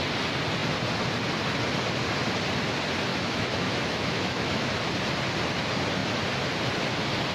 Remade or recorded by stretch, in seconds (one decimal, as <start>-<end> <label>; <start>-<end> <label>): 0.0-3.1 recorded; 3.1-4.7 remade; 4.7-7.3 recorded